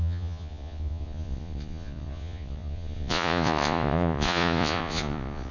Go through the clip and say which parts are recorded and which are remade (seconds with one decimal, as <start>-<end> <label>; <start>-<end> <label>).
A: 0.0-5.5 remade